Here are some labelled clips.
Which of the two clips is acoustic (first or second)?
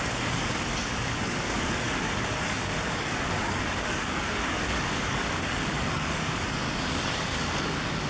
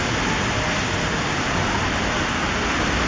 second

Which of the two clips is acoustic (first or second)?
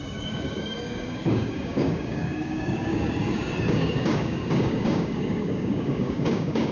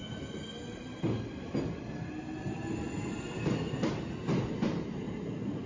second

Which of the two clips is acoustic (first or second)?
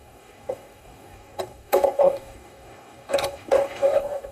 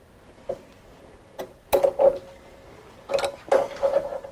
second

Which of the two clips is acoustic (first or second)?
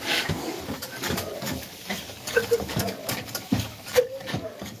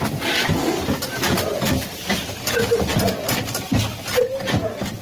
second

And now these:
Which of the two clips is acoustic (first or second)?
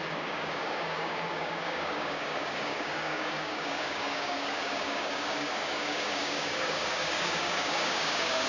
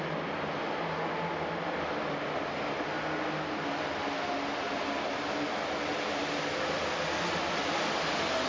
second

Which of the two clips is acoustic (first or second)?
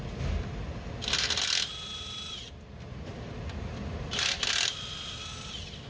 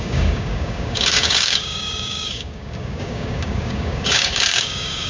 first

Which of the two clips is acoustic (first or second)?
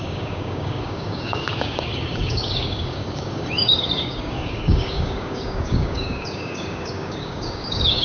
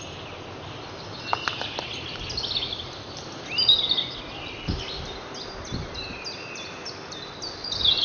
second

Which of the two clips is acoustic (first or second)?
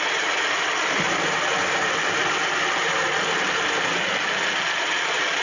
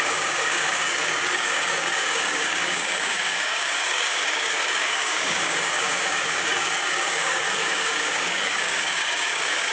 first